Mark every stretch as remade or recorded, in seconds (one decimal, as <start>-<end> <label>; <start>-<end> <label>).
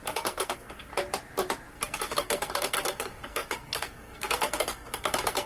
0.0-0.9 remade; 0.9-1.7 recorded; 1.7-5.5 remade